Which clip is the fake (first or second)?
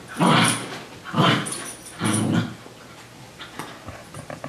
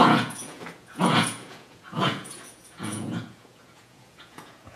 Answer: second